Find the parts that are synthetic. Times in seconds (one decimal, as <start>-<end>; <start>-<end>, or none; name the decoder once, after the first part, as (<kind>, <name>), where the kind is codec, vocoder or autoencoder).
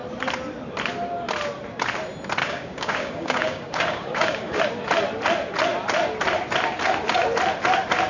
2.4-4.6 (codec, DAC)